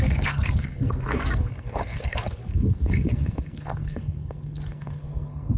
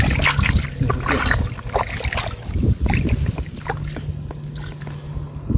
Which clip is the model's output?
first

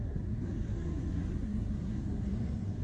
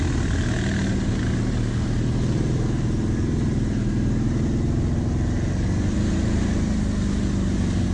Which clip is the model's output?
first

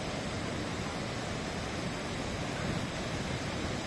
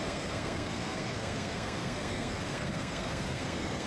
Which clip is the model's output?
second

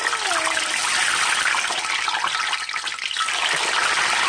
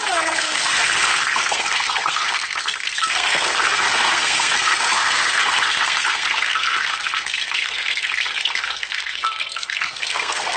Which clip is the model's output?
second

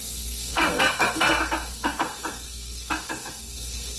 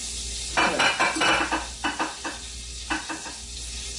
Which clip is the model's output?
first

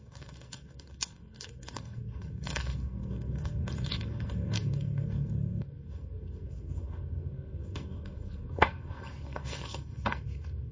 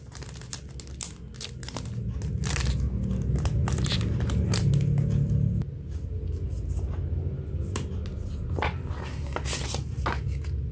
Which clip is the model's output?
first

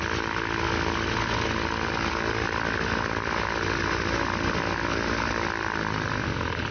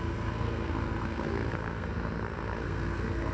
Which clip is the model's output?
second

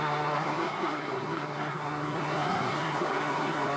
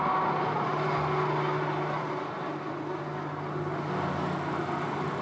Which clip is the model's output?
first